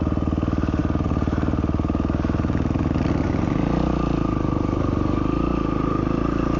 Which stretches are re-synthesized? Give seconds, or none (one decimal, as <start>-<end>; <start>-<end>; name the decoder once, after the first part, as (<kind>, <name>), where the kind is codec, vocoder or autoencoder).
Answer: none